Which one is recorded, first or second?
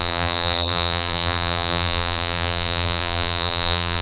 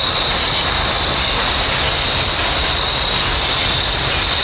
second